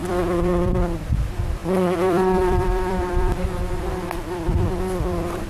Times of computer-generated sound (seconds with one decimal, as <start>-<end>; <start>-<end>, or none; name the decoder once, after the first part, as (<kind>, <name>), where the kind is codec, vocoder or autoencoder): 0.0-5.5 (vocoder, BigVGAN v2)